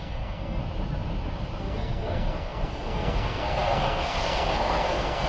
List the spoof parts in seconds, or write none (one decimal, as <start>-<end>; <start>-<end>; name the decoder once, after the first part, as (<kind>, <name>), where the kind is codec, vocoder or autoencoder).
0.0-0.6 (codec, SNAC); 1.6-5.3